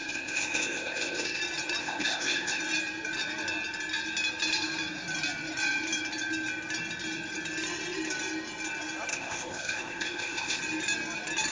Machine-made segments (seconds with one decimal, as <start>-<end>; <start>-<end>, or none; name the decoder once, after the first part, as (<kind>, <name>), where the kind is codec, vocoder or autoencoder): 0.0-1.4 (codec, ZipCodec); 1.8-2.6; 9.1-10.6